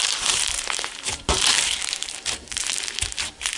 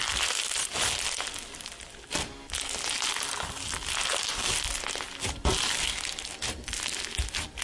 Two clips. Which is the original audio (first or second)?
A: second